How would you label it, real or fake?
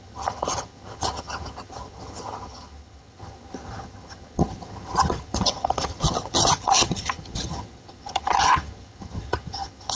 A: fake